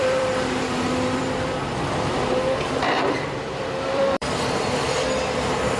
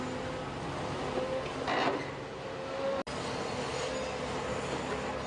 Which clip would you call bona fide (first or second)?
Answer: second